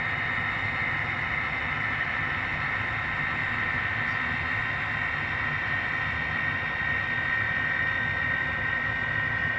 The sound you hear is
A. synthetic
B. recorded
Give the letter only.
B